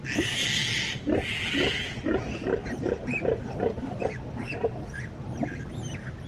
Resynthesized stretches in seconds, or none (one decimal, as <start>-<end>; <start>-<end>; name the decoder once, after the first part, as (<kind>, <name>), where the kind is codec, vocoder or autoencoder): 2.6-4.0 (vocoder, BigVGAN v2)

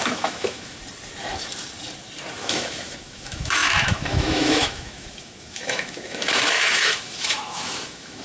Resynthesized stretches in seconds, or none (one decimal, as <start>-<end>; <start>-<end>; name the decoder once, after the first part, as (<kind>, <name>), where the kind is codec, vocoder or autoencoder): 0.0-0.8 (autoencoder, DAC-VAE); 2.4-8.2

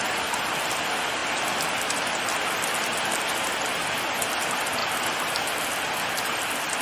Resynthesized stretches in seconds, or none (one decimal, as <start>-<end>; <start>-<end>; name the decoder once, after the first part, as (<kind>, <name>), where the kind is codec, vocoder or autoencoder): none

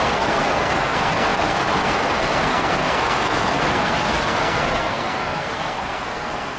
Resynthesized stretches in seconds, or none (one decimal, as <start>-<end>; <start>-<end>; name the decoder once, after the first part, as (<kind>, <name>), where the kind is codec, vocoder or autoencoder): 0.0-6.6 (codec, SNAC)

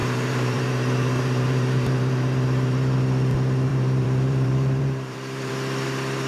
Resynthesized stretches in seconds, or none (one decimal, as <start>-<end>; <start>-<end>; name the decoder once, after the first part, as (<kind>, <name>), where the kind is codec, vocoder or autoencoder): 0.0-3.0 (vocoder, BigVGAN v2); 3.7-5.5